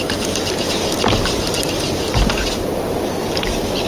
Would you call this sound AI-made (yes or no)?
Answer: no